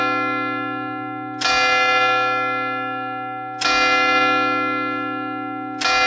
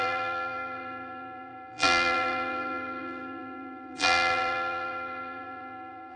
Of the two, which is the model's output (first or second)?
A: second